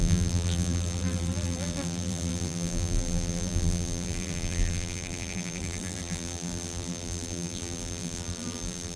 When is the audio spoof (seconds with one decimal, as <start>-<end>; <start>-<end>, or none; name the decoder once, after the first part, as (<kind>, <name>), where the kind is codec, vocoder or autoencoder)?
0.0-9.0 (vocoder, BigVGAN v2)